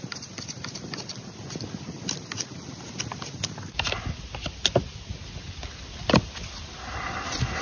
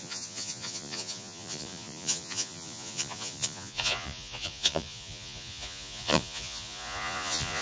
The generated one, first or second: second